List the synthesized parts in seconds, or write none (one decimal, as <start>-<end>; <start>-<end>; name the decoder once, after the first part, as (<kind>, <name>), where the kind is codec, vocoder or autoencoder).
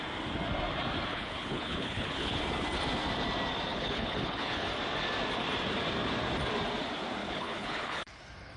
1.1-2.4 (codec, HILCodec); 3.7-4.7; 7.2-8.2